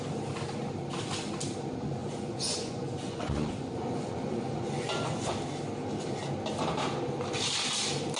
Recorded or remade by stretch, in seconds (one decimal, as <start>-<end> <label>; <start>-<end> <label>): 0.0-2.0 recorded; 2.0-5.3 remade; 5.3-8.2 recorded